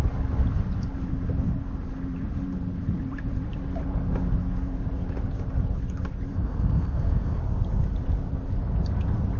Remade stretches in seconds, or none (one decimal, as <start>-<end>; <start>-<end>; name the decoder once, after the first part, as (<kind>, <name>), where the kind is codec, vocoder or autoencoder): 6.3-7.4 (codec, SNAC)